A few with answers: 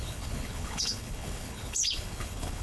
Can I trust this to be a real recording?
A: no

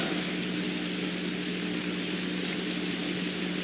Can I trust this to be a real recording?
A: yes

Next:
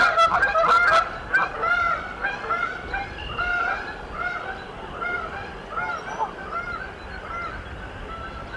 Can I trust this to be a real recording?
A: yes